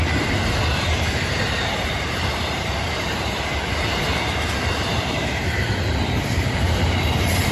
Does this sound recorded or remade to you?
remade